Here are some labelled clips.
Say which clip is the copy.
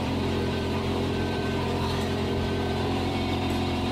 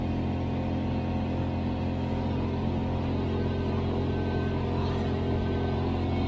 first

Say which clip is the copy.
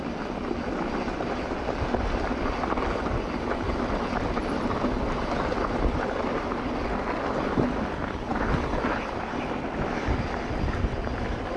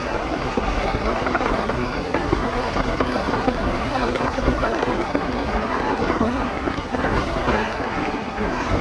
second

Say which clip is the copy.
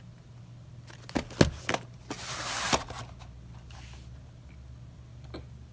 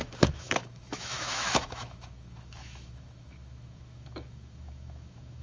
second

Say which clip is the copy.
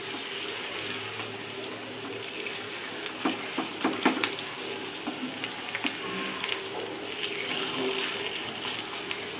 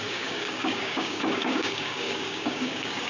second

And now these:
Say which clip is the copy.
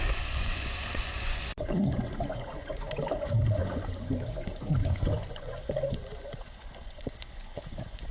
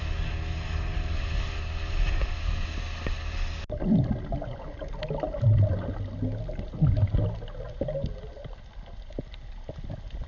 first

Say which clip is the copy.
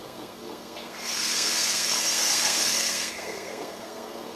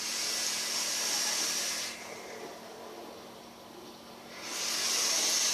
first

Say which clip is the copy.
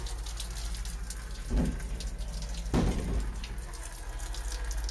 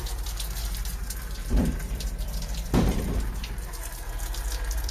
second